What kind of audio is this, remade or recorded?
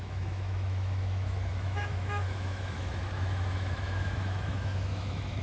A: remade